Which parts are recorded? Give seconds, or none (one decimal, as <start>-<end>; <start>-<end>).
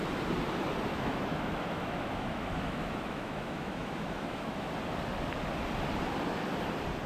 0.0-0.9; 4.7-7.1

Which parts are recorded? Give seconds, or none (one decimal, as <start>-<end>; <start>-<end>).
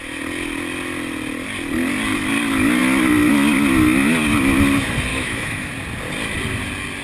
0.0-5.1; 5.7-7.0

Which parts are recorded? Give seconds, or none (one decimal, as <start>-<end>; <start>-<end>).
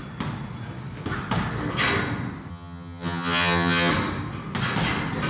0.0-2.5; 3.9-5.3